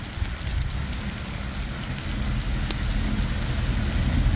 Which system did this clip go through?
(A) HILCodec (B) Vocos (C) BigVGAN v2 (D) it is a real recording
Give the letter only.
D